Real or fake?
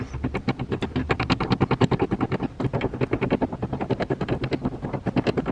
real